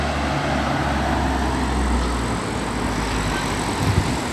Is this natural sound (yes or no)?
yes